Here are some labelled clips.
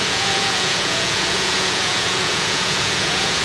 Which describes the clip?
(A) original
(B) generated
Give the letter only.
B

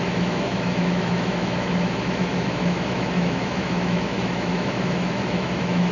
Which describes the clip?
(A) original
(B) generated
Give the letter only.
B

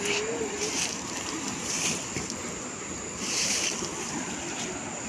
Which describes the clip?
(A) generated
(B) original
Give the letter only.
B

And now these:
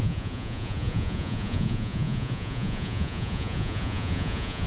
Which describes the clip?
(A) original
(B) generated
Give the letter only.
B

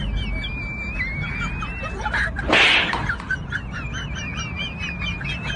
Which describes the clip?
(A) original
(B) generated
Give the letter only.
A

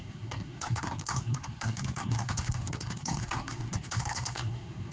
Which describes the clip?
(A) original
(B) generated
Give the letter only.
B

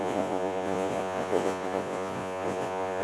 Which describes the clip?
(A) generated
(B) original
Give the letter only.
A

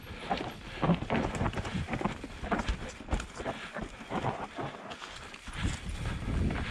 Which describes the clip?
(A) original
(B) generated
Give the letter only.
A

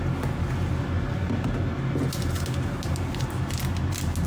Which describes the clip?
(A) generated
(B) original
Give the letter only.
B